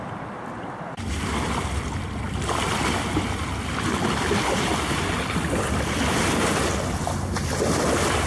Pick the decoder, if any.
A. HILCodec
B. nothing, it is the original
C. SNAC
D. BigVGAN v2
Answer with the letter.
B